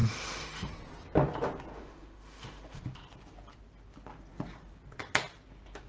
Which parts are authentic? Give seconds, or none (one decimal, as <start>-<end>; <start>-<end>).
0.7-1.7; 2.8-5.9